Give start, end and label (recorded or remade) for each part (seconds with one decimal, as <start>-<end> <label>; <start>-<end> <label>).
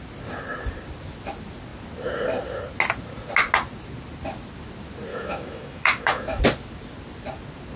0.0-5.1 recorded; 5.1-6.4 remade; 6.4-7.8 recorded